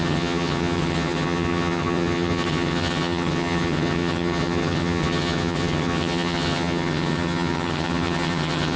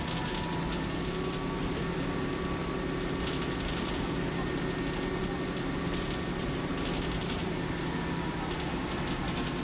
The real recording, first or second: second